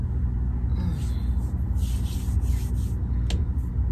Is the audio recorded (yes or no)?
yes